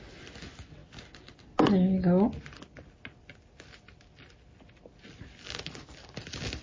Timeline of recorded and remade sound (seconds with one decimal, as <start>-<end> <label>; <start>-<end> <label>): 0.0-6.6 recorded